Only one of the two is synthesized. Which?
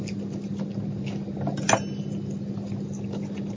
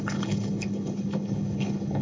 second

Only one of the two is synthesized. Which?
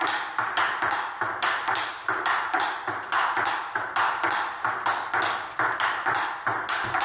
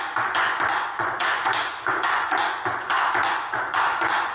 second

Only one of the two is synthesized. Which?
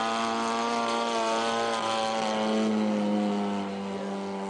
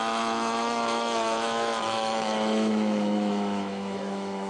second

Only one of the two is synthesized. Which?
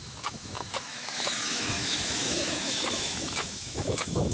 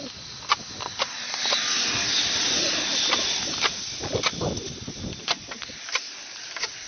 first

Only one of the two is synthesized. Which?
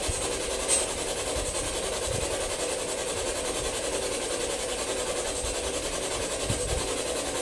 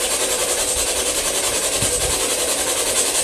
second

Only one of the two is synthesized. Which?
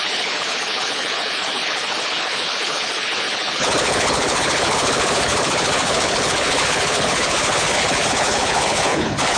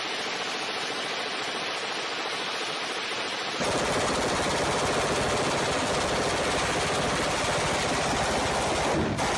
first